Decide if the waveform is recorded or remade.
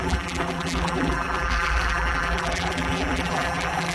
remade